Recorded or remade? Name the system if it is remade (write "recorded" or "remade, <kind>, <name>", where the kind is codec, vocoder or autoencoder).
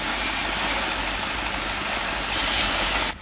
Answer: recorded